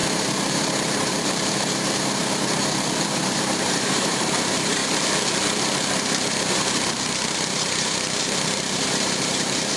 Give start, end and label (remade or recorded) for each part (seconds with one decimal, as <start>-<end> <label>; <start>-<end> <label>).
0.0-4.8 remade; 4.8-6.5 recorded; 6.5-9.8 remade